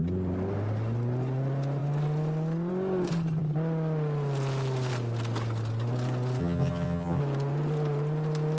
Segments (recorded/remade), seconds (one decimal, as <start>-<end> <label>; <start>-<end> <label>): 0.0-6.4 recorded; 6.4-7.2 remade; 7.2-8.6 recorded